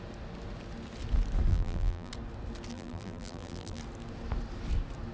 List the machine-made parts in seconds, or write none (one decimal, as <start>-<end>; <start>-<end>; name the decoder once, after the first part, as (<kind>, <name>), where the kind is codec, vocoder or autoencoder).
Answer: 1.5-2.1 (vocoder, BigVGAN v2); 2.7-3.8